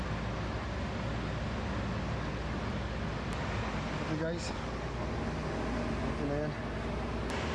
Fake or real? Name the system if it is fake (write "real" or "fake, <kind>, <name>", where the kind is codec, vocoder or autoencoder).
real